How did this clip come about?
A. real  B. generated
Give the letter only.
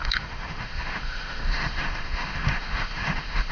B